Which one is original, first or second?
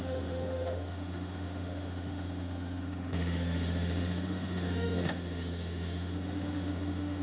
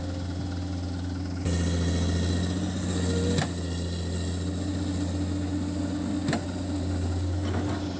second